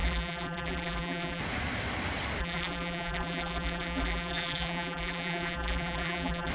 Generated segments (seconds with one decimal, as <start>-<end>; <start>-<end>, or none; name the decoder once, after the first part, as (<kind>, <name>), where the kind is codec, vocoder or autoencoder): 0.0-1.4 (vocoder, BigVGAN v2); 2.4-6.5